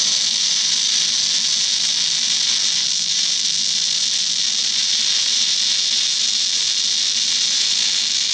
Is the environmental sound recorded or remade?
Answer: recorded